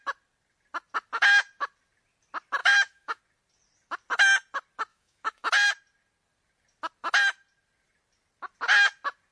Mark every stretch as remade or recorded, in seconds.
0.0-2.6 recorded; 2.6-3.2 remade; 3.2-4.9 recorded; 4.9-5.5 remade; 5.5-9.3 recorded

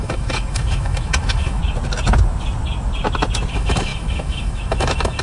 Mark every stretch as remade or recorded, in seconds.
0.0-1.6 remade; 1.6-3.5 recorded; 3.5-5.2 remade

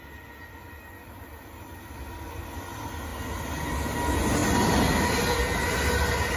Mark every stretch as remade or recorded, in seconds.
0.0-6.4 recorded

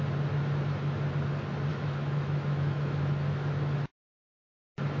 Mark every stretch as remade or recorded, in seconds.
0.0-1.7 recorded; 1.7-4.4 remade; 4.4-5.0 recorded

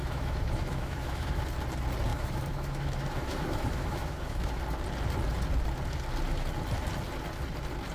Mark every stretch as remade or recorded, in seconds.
0.0-1.4 remade; 1.4-2.1 recorded; 2.1-4.6 remade; 4.6-7.9 recorded

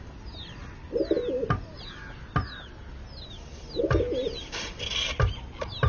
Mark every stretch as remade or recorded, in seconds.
0.0-5.9 recorded

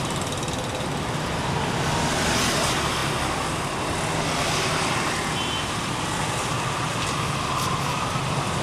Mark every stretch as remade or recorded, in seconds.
0.0-8.6 recorded

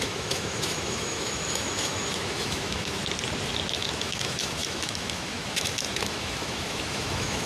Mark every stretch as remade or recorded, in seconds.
0.0-3.0 remade; 3.0-3.7 recorded; 3.7-7.5 remade